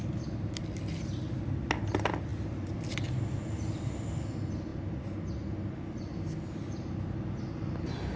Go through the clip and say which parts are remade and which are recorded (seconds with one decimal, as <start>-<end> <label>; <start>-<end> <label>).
0.0-8.2 recorded